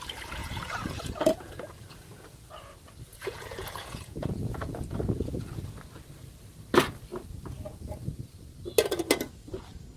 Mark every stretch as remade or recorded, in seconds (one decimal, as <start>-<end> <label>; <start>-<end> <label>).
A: 0.0-0.4 recorded; 0.4-2.5 remade; 2.5-3.1 recorded; 3.1-4.8 remade; 4.8-10.0 recorded